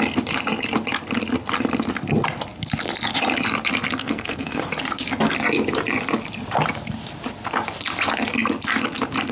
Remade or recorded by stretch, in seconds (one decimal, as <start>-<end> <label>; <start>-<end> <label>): 0.0-4.0 recorded; 4.0-4.6 remade; 4.6-9.3 recorded